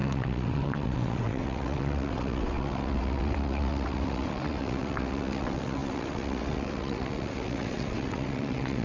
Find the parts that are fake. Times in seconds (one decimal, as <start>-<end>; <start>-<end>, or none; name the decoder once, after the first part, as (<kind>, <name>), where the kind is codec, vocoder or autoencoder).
0.0-8.8 (vocoder, WaveNeXt)